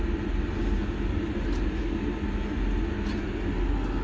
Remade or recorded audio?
recorded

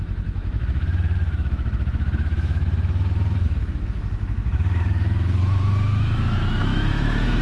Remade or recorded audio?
remade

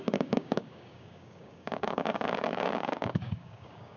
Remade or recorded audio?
remade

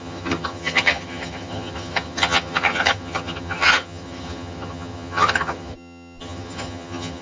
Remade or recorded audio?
remade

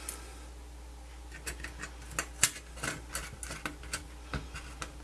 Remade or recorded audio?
recorded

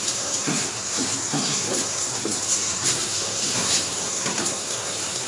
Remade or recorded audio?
remade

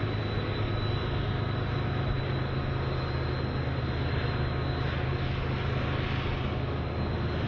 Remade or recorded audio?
recorded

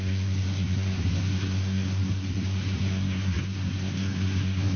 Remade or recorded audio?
remade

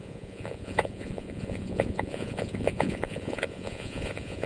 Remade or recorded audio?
remade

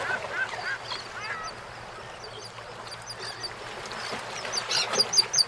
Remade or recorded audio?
recorded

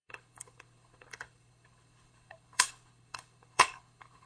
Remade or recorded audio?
remade